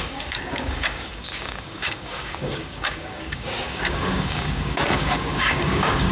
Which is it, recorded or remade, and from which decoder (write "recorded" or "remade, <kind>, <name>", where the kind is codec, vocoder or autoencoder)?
remade, codec, DAC